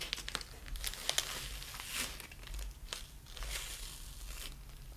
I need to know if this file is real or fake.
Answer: real